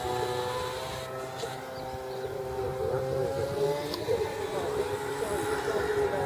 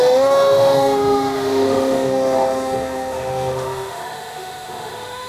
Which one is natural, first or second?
first